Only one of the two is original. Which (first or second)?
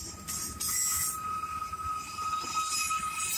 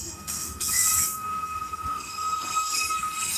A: first